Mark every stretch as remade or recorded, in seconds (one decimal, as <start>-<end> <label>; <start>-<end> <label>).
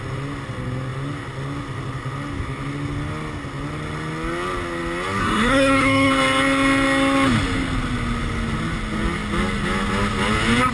0.0-5.2 recorded; 5.2-6.1 remade; 6.1-10.7 recorded